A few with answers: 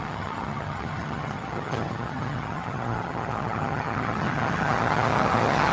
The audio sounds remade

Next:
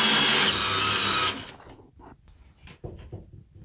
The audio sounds recorded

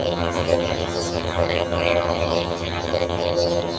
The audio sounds remade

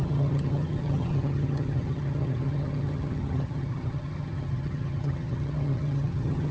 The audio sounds remade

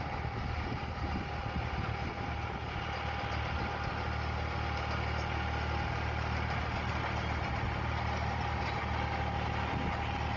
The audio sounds recorded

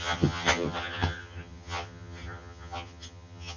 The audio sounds remade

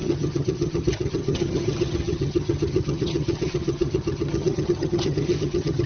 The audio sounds remade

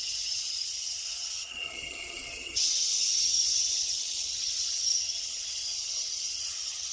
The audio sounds remade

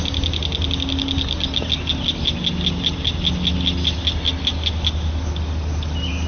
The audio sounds recorded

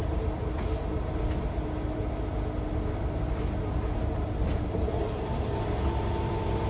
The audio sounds recorded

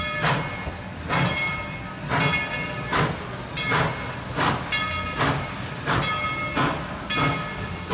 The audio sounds recorded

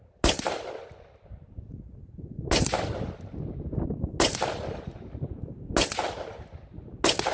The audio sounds recorded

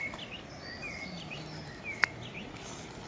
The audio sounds recorded